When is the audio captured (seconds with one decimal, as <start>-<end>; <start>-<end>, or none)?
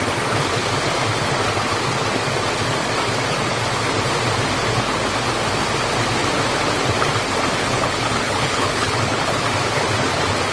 0.0-7.6; 9.4-10.5